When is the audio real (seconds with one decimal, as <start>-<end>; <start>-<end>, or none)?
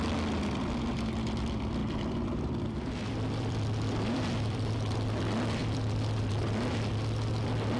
0.0-1.8; 4.7-5.6; 6.2-7.8